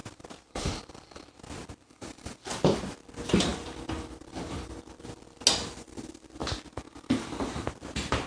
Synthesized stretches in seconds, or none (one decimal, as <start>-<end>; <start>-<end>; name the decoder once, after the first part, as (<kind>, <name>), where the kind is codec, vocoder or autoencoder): 0.0-1.1 (vocoder, BigVGAN v2); 3.5-5.0